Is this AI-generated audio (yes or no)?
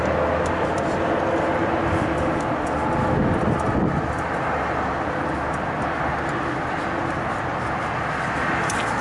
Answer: no